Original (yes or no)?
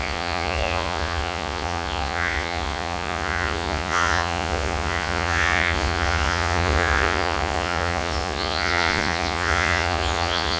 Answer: no